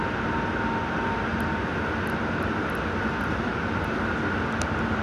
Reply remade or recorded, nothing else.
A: recorded